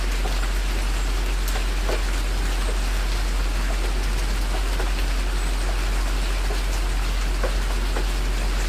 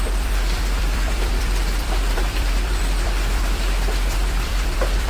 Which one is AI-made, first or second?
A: second